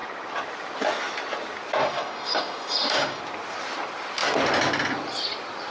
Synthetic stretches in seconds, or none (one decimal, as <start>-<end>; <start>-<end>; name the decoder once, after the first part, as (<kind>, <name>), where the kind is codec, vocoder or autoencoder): 1.8-3.2 (codec, DAC)